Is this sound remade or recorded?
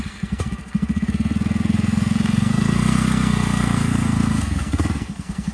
remade